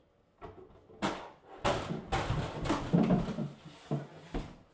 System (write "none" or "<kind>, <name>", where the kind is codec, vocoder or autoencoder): none